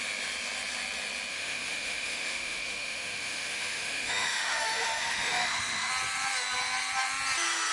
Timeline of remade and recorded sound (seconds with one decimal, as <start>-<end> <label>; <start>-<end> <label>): 0.0-1.3 recorded; 1.3-5.9 remade; 5.9-7.7 recorded